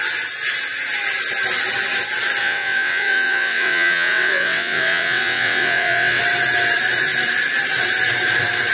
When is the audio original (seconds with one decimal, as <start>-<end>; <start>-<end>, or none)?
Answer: 0.0-2.4; 6.2-8.7